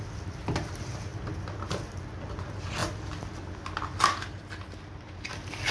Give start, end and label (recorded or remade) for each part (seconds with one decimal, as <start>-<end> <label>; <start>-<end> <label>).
0.0-5.7 recorded